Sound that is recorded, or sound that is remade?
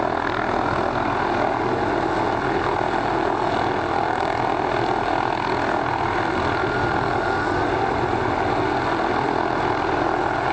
recorded